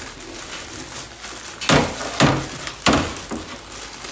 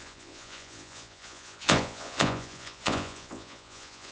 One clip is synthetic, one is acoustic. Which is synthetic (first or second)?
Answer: second